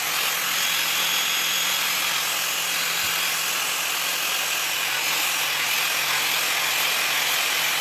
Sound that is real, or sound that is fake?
real